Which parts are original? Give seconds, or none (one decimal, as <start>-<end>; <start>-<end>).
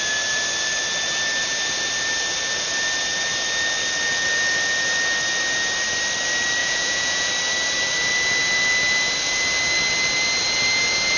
0.0-6.6; 7.3-11.2